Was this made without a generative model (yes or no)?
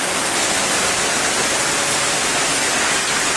yes